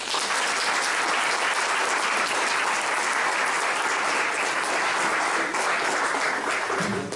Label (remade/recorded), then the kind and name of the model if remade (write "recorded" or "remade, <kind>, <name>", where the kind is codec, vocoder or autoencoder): recorded